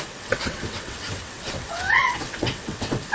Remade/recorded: remade